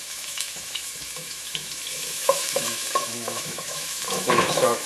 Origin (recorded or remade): remade